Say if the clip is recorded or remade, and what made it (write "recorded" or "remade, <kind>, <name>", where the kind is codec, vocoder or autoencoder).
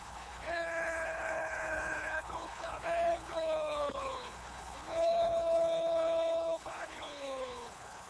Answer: remade, codec, HILCodec